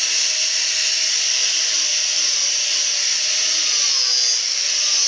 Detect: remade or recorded recorded